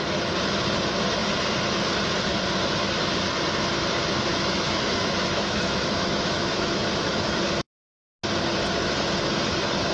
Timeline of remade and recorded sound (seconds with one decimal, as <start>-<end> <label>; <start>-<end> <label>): 0.0-4.3 recorded; 4.3-7.4 remade; 7.4-9.9 recorded